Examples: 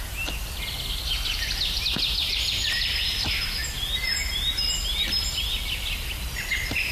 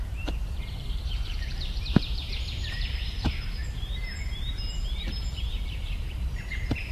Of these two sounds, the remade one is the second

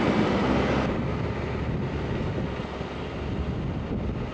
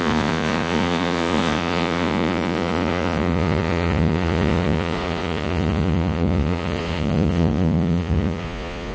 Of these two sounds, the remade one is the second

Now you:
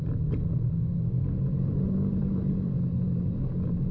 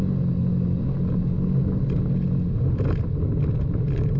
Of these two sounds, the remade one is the first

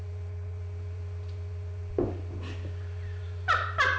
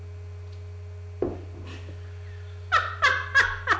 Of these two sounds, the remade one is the first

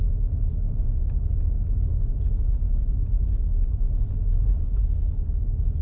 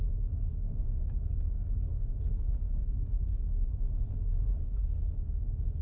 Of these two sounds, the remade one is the second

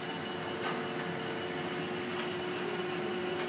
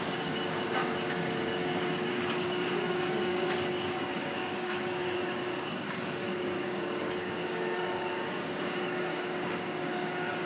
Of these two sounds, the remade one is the second